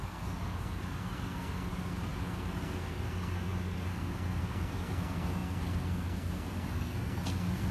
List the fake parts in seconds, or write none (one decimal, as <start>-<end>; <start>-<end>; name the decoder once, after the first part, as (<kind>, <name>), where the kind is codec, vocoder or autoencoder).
0.0-7.7 (codec, SNAC)